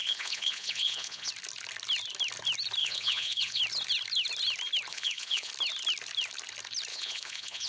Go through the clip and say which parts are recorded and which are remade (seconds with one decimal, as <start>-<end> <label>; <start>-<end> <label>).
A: 0.0-1.3 remade; 1.3-2.8 recorded; 2.8-3.6 remade; 3.6-4.9 recorded; 4.9-5.5 remade; 5.5-6.9 recorded; 6.9-7.7 remade